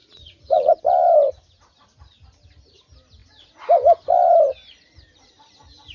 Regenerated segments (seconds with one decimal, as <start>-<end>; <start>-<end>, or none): 0.0-0.8